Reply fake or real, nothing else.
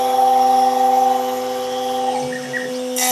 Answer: real